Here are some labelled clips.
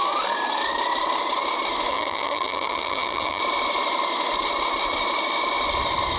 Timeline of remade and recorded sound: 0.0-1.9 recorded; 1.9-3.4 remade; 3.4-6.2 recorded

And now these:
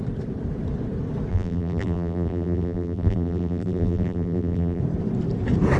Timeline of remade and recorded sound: 0.0-1.3 recorded; 1.3-4.8 remade; 4.8-5.8 recorded

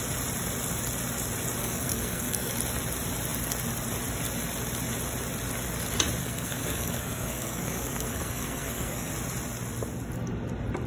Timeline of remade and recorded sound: 0.0-1.6 recorded; 1.6-2.5 remade; 2.5-6.2 recorded; 6.2-9.1 remade; 9.1-10.9 recorded

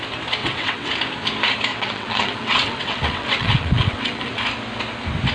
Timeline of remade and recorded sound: 0.0-0.4 recorded; 0.4-0.9 remade; 0.9-1.7 recorded; 1.7-4.3 remade; 4.3-5.3 recorded

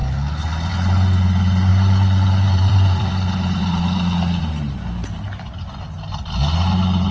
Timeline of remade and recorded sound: 0.0-1.7 recorded; 1.7-4.4 remade; 4.4-7.1 recorded

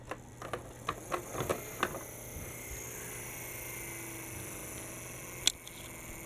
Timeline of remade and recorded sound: 0.0-6.3 recorded

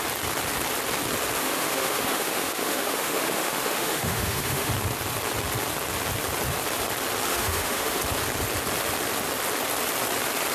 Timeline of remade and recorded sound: 0.0-1.4 recorded; 1.4-4.7 remade; 4.7-7.3 recorded; 7.3-8.0 remade; 8.0-10.5 recorded

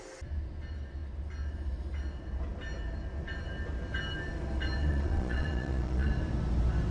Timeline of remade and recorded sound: 0.0-4.8 recorded; 4.8-6.1 remade; 6.1-6.9 recorded